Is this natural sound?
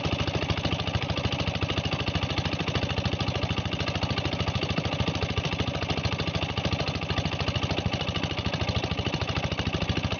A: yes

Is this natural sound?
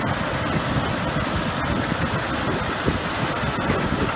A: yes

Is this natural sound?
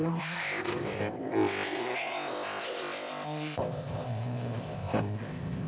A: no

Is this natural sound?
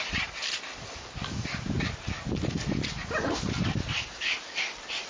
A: yes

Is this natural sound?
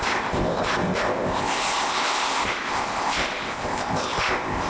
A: no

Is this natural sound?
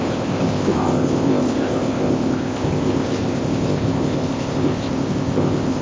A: no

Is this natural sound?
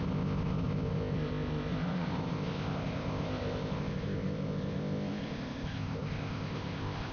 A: no